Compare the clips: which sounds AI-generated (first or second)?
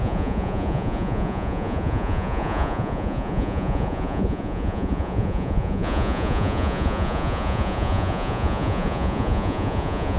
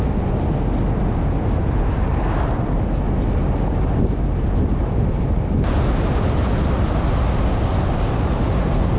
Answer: first